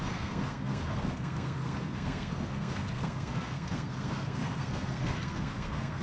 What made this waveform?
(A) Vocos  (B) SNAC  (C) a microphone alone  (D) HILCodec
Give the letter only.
B